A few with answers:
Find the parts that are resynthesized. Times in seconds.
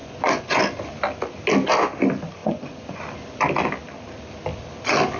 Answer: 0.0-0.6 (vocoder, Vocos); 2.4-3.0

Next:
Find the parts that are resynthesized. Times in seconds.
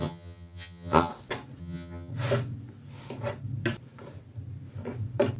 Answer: 0.0-1.1 (vocoder, HiFi-GAN); 1.6-2.1